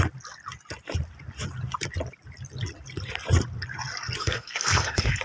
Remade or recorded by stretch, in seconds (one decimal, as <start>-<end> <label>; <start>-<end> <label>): 0.0-4.2 recorded; 4.2-5.2 remade